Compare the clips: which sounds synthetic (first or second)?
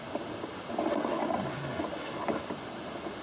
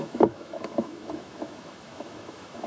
second